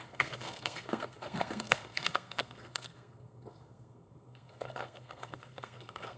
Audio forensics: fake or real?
fake